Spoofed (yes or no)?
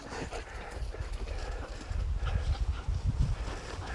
no